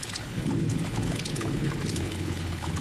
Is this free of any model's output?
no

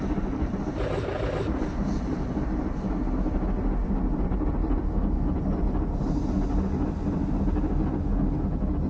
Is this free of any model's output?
yes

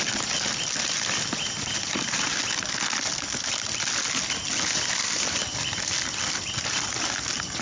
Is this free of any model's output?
yes